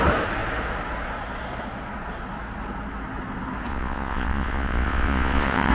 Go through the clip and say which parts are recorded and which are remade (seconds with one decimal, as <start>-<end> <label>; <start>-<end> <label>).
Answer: 0.0-3.7 recorded; 3.7-5.7 remade